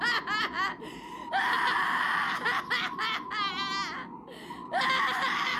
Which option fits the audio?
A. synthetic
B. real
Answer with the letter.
B